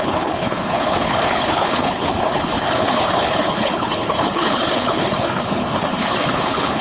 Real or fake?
fake